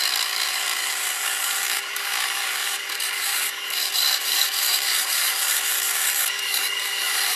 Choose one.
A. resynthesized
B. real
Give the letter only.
A